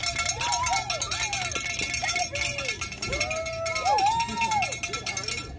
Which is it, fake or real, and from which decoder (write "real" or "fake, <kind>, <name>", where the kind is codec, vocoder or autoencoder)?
real